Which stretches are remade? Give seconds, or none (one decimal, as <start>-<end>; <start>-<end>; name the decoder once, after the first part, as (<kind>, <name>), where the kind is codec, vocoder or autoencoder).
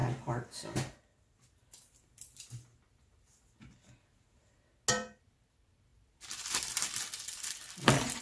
4.9-8.2 (vocoder, BigVGAN v2)